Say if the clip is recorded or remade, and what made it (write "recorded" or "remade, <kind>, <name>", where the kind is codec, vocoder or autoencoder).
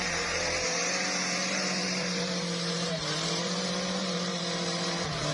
remade, vocoder, BigVGAN v2